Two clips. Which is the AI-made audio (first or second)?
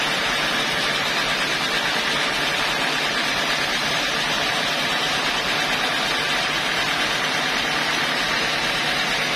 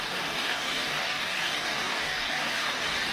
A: second